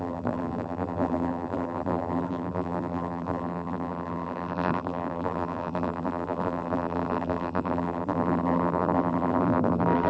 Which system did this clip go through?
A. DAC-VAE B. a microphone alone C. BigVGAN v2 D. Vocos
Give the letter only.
C